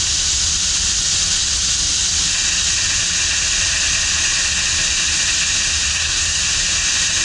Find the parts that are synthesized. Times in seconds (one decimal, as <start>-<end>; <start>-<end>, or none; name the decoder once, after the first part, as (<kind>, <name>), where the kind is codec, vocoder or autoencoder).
5.9-6.4 (codec, SNAC)